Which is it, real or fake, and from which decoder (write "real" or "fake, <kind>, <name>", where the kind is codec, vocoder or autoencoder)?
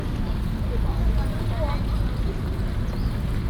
real